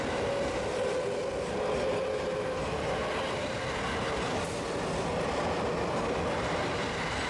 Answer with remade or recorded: recorded